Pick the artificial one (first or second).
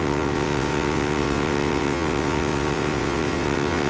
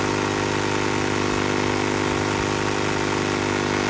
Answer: first